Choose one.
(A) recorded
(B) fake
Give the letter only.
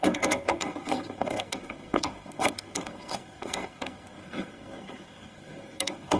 B